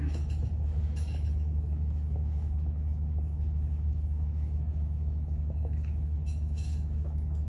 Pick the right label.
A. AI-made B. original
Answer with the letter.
A